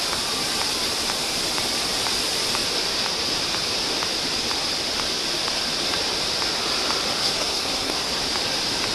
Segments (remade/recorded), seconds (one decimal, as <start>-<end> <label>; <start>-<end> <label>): 0.0-7.2 recorded; 7.2-8.2 remade; 8.2-8.9 recorded

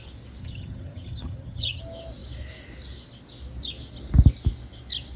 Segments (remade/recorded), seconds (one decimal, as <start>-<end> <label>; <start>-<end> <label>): 0.0-0.4 recorded; 0.4-1.8 remade; 1.8-5.2 recorded